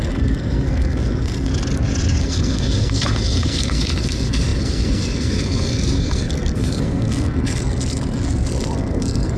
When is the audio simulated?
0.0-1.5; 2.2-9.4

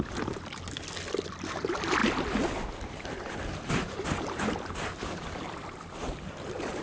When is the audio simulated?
none